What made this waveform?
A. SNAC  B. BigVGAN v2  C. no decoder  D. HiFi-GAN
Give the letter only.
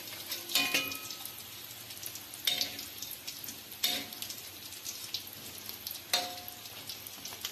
C